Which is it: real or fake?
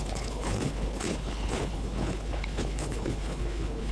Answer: fake